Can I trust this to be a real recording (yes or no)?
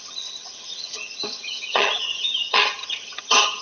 no